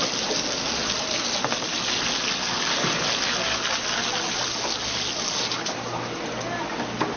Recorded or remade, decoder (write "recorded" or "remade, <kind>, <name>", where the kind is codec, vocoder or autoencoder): recorded